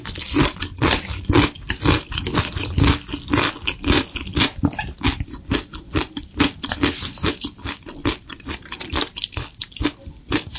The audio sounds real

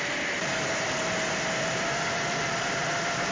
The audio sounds real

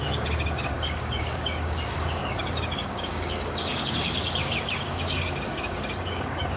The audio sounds fake